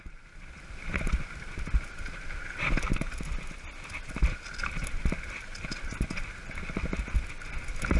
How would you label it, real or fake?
real